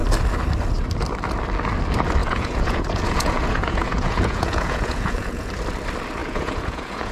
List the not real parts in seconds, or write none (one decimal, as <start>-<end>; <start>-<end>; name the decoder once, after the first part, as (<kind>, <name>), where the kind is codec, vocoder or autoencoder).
2.2-5.5 (vocoder, Vocos); 6.2-7.1